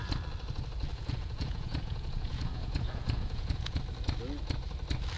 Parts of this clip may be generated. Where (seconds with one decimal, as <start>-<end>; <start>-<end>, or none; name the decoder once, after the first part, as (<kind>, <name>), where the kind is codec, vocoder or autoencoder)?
0.9-3.8 (vocoder, Vocos)